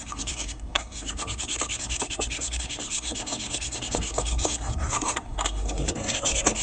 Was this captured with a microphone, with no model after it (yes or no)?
no